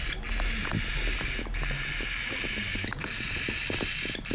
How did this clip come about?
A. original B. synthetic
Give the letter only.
A